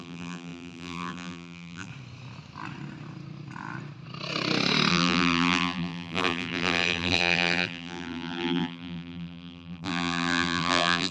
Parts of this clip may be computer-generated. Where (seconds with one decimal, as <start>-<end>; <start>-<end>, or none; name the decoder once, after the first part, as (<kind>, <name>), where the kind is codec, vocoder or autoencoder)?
0.0-1.9 (vocoder, BigVGAN v2); 4.9-11.1